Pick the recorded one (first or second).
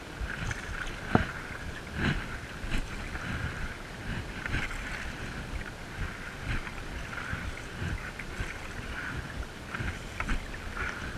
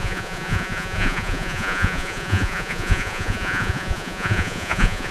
first